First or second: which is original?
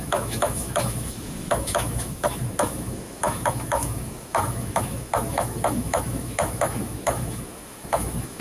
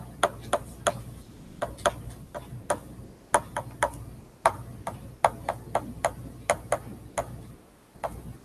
second